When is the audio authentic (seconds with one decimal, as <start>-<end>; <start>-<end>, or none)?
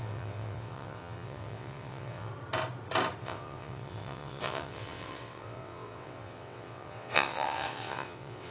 2.3-3.2